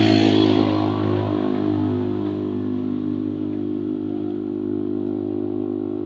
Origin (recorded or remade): recorded